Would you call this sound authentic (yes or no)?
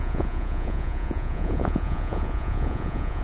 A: no